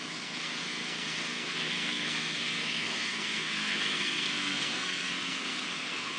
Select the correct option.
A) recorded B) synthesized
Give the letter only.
B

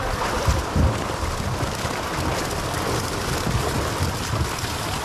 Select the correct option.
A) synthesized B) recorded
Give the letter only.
B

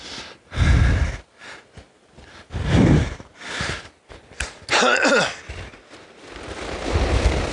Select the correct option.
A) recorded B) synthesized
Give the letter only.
A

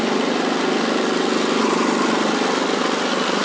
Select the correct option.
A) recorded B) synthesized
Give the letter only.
A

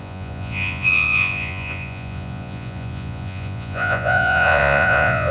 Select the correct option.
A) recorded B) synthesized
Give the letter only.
B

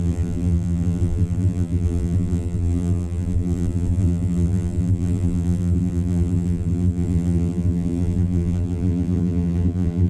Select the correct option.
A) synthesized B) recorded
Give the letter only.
A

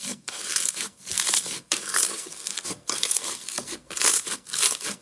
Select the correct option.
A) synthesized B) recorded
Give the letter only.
A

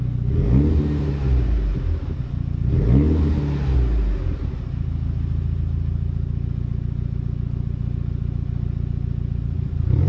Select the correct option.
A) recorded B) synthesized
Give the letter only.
A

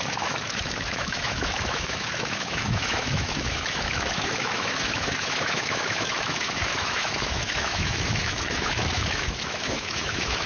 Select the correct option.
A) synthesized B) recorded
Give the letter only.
A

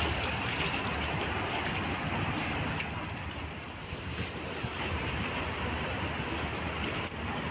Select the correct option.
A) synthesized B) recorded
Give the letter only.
B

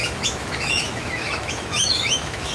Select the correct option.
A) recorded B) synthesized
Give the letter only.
B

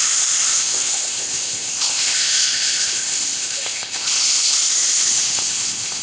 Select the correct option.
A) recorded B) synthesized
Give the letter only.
B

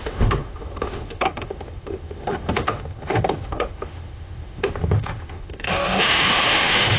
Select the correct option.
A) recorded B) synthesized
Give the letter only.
B